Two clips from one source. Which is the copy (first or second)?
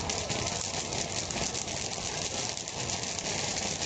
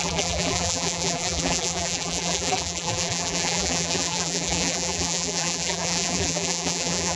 second